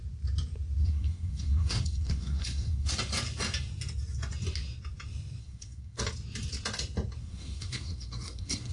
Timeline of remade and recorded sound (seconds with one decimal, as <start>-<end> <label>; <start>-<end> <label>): 0.0-0.8 recorded; 0.8-2.9 remade; 2.9-5.4 recorded; 5.4-6.0 remade; 6.0-7.2 recorded; 7.2-8.7 remade